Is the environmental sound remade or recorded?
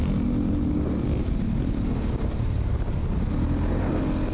recorded